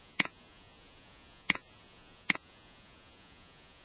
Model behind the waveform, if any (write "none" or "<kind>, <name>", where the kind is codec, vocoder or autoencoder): vocoder, Vocos